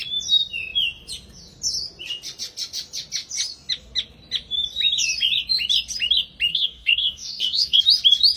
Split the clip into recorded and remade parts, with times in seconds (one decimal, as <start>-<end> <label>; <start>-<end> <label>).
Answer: 0.0-6.5 recorded; 6.5-7.8 remade; 7.8-8.4 recorded